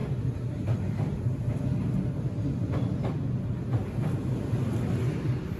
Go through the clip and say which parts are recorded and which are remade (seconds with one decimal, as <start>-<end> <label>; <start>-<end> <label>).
0.0-5.6 recorded